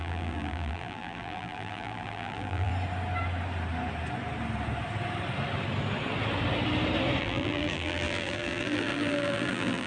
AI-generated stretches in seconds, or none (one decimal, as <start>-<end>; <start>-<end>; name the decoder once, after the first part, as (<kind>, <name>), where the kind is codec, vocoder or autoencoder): 0.0-2.7 (vocoder, BigVGAN v2); 7.2-9.9